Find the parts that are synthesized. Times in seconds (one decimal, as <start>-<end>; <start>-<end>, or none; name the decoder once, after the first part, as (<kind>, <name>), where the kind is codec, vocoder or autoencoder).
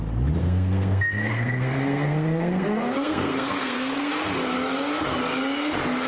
0.4-4.1 (codec, SNAC)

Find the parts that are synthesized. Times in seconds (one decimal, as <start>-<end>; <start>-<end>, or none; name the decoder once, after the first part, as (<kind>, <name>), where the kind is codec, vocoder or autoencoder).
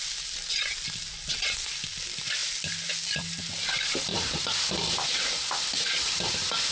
4.1-4.6 (vocoder, BigVGAN v2)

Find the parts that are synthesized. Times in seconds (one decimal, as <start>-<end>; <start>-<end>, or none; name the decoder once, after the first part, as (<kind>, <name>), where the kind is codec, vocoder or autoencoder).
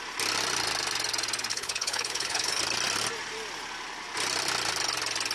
1.5-2.6 (codec, HILCodec)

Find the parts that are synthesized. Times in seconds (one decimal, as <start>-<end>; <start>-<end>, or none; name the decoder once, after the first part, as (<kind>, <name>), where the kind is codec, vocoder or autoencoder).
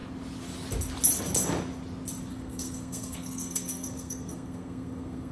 2.3-5.3 (codec, SNAC)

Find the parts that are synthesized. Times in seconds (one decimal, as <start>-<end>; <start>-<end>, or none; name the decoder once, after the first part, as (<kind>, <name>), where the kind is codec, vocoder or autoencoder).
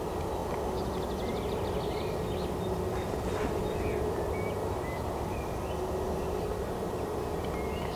none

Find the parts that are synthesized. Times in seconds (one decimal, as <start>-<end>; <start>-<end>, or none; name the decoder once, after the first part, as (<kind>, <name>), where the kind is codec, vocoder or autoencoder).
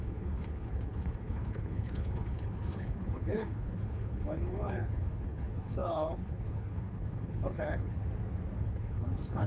0.0-8.0 (codec, HILCodec); 8.6-9.5